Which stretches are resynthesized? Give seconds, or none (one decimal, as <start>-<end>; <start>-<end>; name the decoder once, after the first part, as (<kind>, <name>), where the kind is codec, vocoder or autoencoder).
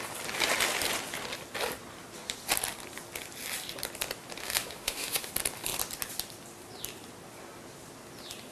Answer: 4.4-5.3 (autoencoder, DAC-VAE)